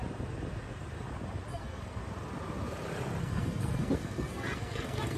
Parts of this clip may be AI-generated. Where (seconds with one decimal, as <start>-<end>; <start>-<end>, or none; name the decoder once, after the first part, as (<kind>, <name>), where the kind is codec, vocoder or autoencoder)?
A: 1.5-2.0 (codec, SNAC); 3.2-5.2